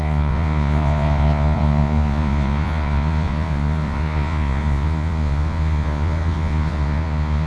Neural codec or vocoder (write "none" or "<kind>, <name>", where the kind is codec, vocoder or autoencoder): vocoder, Vocos